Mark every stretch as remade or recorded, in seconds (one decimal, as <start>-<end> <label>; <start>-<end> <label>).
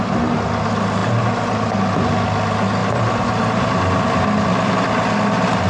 0.0-5.7 recorded